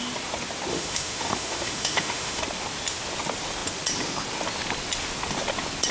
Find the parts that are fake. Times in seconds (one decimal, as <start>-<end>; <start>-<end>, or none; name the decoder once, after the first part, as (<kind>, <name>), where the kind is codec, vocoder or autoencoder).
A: 0.7-2.4 (autoencoder, DAC-VAE)